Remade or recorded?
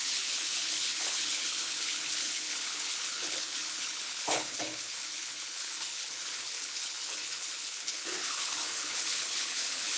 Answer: remade